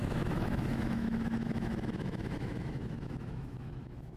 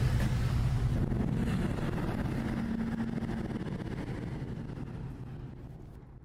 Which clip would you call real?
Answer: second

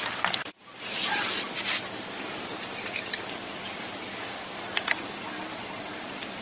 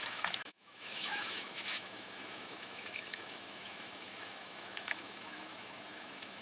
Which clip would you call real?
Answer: first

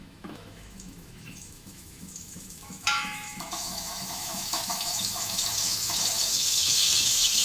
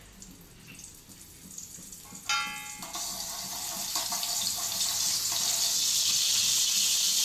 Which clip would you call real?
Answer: second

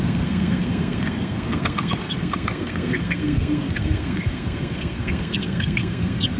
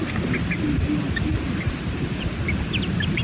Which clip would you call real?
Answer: second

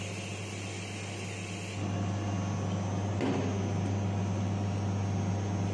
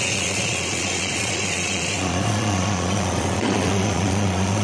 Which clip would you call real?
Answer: first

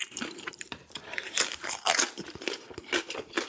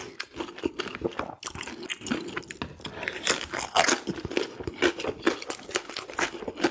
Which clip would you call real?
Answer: second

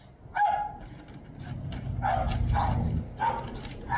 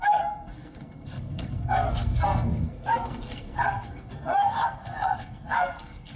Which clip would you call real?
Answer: first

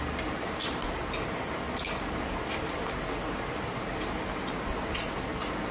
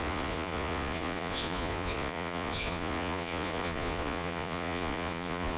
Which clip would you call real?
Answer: first